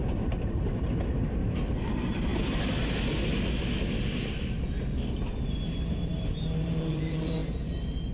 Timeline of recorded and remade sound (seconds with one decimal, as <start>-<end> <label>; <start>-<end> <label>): 0.0-2.3 remade; 2.3-5.2 recorded; 5.2-8.1 remade